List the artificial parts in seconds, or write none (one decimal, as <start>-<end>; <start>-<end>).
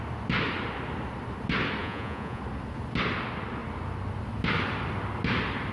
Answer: 1.8-2.4